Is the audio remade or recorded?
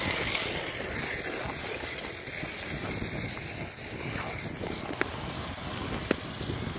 recorded